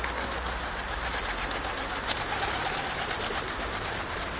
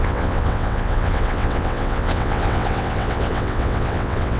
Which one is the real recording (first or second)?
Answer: first